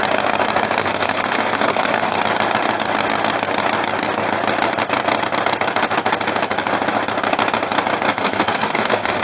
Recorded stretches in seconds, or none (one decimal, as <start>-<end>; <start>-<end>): 0.0-0.8; 2.2-8.1